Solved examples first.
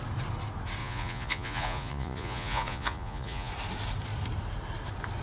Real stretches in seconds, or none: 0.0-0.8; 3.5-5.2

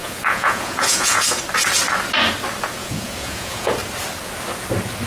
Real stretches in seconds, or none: 1.4-2.8; 3.7-5.1

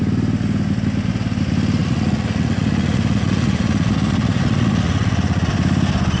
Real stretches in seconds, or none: 0.0-1.8; 5.5-6.2